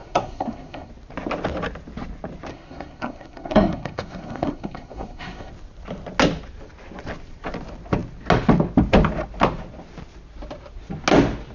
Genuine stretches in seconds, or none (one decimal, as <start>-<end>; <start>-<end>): 0.9-2.5; 5.5-11.5